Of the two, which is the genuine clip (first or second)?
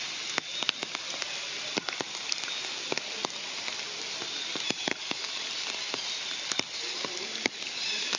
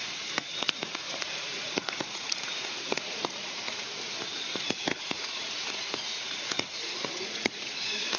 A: first